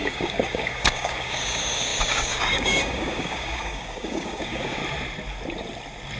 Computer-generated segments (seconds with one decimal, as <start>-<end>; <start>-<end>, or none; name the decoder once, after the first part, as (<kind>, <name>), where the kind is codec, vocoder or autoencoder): 0.0-4.8 (codec, DAC)